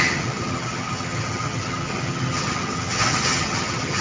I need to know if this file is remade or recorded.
remade